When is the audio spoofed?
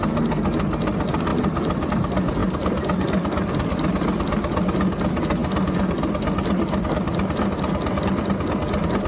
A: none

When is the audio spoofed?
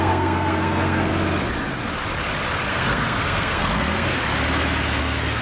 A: 0.0-1.1 (codec, SNAC); 2.7-4.1; 5.0-5.4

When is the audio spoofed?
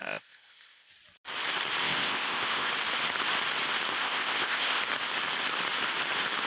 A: 0.0-0.9 (codec, ZipCodec); 1.8-2.7; 3.9-4.8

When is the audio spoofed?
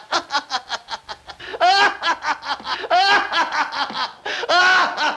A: none